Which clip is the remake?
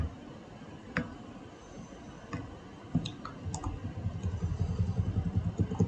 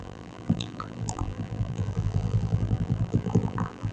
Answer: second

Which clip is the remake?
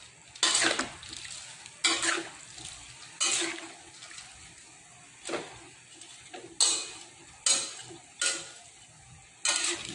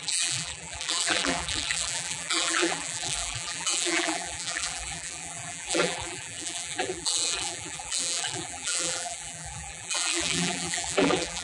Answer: second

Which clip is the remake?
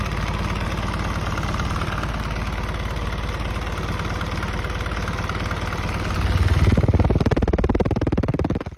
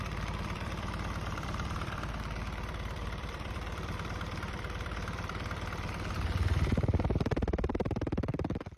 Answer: second